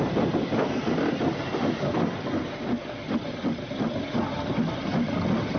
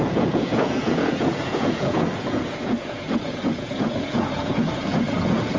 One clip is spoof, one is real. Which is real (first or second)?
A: first